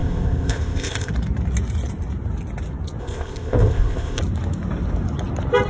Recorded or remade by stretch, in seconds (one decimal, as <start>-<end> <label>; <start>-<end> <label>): 0.0-1.1 remade; 1.1-3.0 recorded; 3.0-4.2 remade; 4.2-5.7 recorded